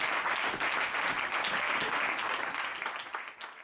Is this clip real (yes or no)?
yes